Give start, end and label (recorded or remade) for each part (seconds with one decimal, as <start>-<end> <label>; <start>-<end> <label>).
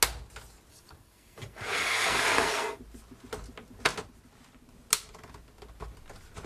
0.0-0.7 recorded; 0.7-2.8 remade; 2.8-6.5 recorded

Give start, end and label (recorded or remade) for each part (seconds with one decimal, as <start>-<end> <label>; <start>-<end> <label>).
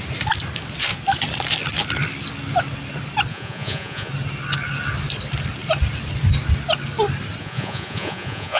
0.0-3.3 recorded; 3.3-4.1 remade; 4.1-7.4 recorded; 7.4-8.6 remade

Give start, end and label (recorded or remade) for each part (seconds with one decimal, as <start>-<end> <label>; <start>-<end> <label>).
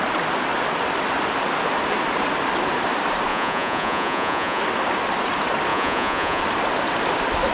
0.0-3.3 recorded; 3.3-4.6 remade; 4.6-5.7 recorded; 5.7-6.4 remade; 6.4-7.5 recorded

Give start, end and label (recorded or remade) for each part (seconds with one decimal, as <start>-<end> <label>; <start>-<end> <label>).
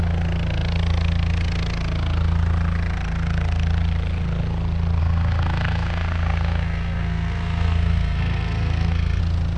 0.0-5.0 recorded; 5.0-9.2 remade; 9.2-9.6 recorded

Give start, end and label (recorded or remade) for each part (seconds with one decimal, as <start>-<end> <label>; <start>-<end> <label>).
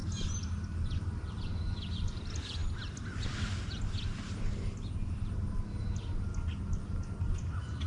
0.0-1.2 recorded; 1.2-2.6 remade; 2.6-6.9 recorded; 6.9-7.9 remade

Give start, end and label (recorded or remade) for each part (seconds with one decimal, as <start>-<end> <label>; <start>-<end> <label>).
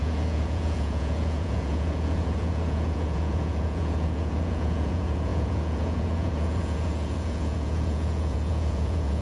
0.0-9.2 remade